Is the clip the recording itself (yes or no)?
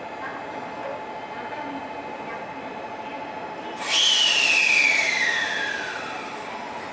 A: yes